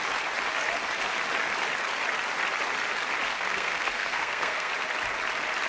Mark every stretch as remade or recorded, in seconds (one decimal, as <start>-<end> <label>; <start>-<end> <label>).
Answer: 0.0-3.3 recorded; 3.3-4.7 remade; 4.7-5.7 recorded